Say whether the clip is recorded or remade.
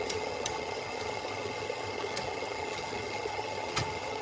remade